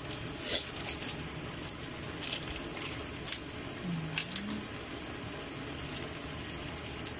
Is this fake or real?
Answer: real